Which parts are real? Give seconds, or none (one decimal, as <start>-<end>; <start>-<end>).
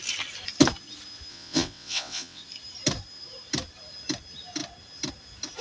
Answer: 0.0-1.3; 2.4-5.6